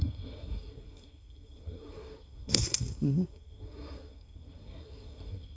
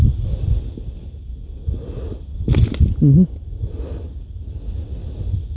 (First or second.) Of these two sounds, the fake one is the first